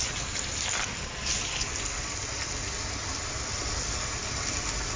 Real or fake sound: real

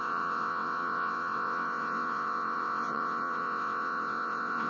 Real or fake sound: fake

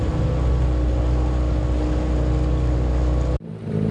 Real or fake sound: real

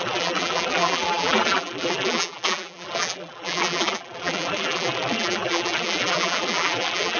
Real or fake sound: fake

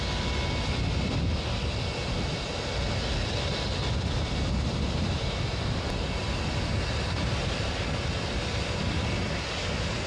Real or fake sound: real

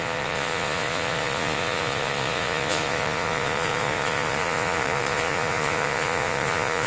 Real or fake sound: fake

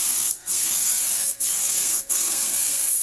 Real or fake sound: fake